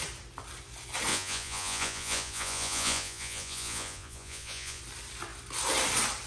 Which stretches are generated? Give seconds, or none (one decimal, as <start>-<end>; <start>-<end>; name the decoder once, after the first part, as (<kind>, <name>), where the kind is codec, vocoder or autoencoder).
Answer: 1.1-4.8 (vocoder, Vocos)